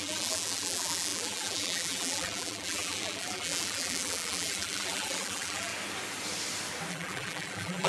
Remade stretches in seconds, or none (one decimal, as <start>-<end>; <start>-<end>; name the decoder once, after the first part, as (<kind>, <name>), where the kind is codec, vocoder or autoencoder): 0.0-5.7 (vocoder, BigVGAN v2); 6.9-7.9

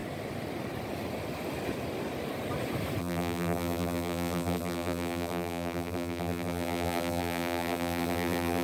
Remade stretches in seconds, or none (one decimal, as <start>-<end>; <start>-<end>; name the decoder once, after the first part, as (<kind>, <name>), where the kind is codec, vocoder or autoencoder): 3.0-8.6 (vocoder, BigVGAN v2)

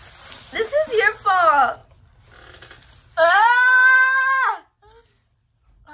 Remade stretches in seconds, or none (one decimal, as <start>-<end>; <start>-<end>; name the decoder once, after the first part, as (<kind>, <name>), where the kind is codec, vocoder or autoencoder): none

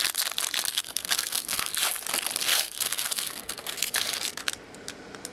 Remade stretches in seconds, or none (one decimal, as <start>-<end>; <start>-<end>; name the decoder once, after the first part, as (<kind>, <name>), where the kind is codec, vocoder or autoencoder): 0.7-1.7 (codec, SNAC); 2.4-4.5

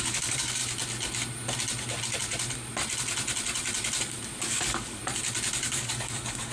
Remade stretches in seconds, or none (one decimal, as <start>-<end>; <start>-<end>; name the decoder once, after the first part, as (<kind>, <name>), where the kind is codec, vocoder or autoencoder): 0.0-0.6 (codec, DAC); 4.5-5.0; 5.6-6.5

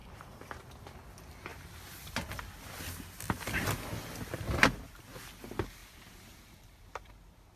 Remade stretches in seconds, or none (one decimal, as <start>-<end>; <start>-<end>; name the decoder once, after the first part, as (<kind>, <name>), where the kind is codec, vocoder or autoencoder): 0.0-0.7 (vocoder, BigVGAN v2); 5.8-7.1